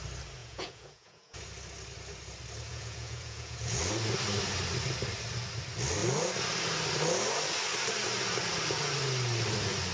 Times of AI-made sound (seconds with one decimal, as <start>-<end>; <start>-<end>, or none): 0.4-1.4; 2.7-3.8